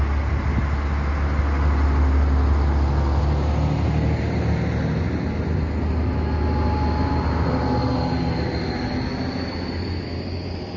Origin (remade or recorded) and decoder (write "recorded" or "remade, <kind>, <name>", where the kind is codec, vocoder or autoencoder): recorded